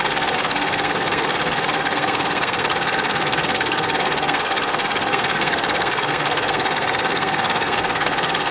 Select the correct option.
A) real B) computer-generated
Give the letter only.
B